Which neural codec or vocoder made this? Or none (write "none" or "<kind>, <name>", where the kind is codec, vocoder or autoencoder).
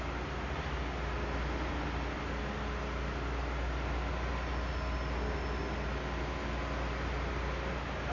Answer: none